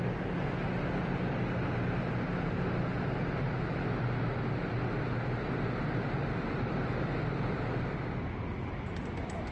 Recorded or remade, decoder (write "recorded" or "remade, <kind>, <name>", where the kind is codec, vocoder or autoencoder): recorded